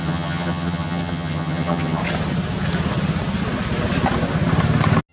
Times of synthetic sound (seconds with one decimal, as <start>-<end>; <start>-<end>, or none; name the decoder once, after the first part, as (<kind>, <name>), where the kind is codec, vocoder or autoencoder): 0.0-2.0 (vocoder, HiFi-GAN)